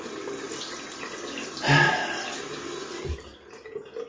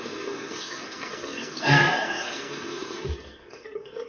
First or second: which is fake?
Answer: second